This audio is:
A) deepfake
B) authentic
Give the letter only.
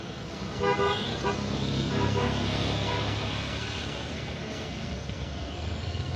A